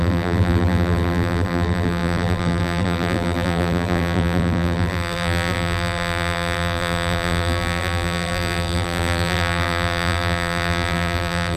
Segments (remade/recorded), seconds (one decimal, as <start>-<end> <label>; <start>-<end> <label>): 0.0-11.6 remade